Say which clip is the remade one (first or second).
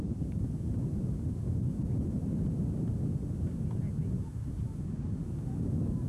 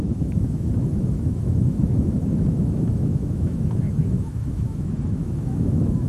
second